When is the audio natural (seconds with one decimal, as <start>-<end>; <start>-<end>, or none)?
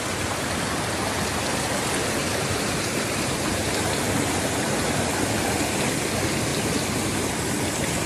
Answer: 0.0-2.2; 3.7-8.1